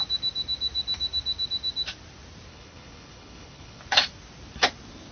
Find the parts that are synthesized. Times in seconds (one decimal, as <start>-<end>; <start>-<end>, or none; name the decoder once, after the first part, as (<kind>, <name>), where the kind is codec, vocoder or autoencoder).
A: 2.5-3.8 (codec, HILCodec)